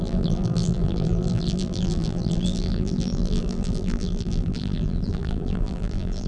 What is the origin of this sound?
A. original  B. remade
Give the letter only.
B